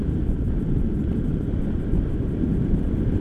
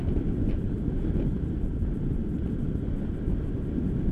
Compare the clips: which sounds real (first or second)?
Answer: second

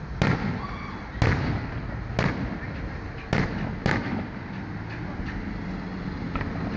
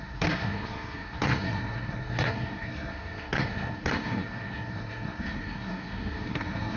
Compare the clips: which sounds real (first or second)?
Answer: first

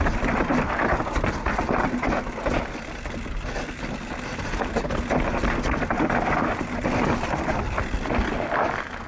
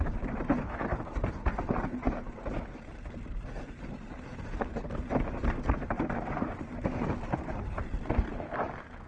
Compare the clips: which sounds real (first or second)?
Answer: first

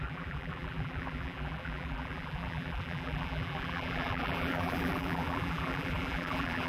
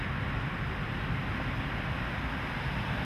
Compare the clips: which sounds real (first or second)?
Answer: second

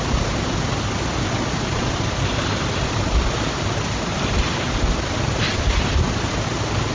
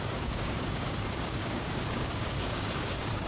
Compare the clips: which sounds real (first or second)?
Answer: first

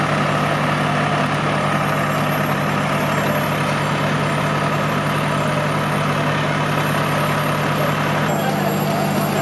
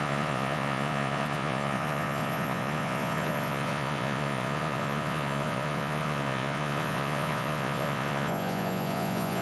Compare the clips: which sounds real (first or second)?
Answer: first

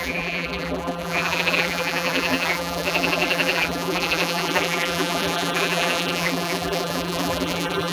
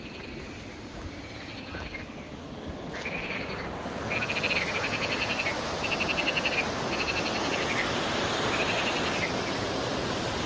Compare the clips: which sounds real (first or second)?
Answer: second